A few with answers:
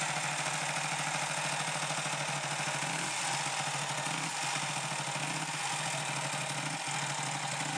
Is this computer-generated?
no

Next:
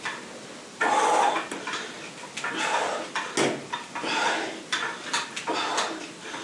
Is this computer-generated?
no